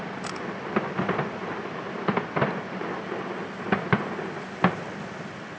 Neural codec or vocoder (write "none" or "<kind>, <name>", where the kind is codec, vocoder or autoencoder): none